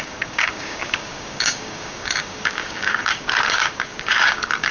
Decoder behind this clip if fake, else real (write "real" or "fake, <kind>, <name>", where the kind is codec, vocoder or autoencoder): fake, codec, DAC